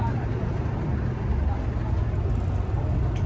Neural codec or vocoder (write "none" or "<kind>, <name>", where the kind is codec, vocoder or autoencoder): none